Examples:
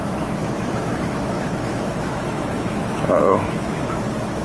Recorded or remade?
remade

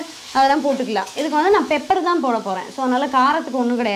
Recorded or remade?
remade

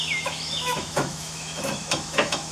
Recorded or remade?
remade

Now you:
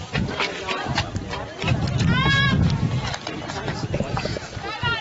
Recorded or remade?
recorded